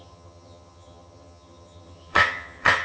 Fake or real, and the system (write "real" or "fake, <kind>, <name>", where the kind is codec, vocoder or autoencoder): fake, vocoder, HiFi-GAN